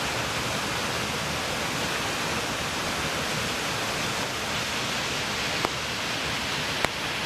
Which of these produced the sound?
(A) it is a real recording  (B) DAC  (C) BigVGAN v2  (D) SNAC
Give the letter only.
A